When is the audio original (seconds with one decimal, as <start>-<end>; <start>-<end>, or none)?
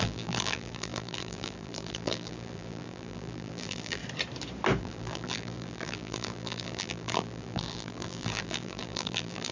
4.0-4.8